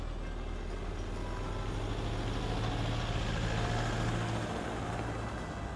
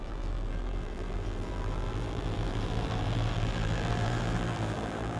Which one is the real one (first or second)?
first